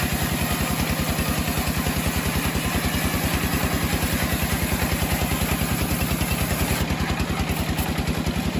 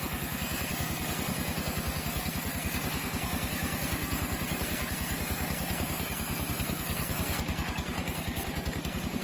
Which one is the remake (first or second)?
second